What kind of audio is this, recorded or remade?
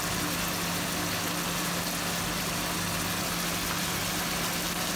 recorded